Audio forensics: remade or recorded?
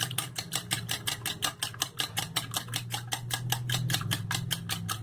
recorded